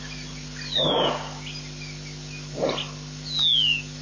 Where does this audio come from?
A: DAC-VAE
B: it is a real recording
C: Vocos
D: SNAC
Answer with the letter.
B